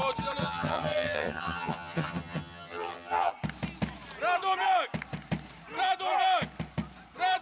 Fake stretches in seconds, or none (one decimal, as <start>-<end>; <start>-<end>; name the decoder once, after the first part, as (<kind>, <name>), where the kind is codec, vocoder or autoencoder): 0.4-3.3 (vocoder, HiFi-GAN)